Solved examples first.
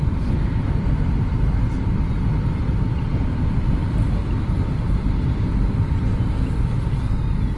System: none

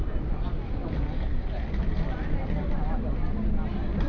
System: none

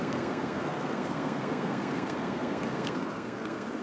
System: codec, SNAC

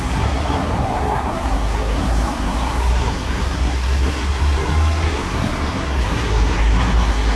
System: codec, SNAC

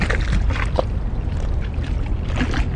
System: none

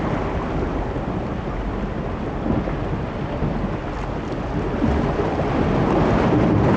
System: none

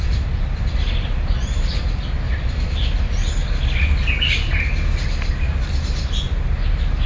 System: none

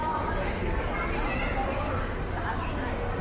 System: none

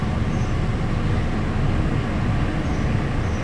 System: none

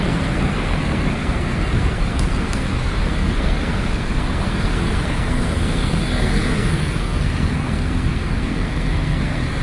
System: codec, SNAC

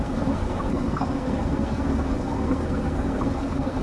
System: codec, SNAC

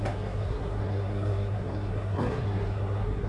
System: codec, SNAC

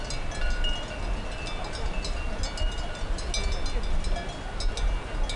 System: none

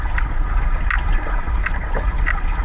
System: none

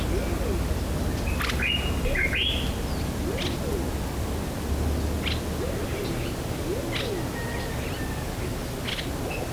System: none